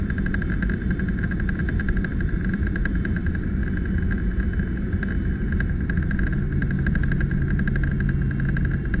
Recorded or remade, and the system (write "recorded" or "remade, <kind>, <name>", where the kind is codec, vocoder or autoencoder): recorded